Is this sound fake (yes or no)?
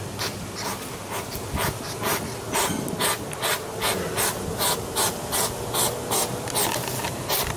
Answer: no